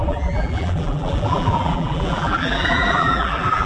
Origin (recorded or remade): remade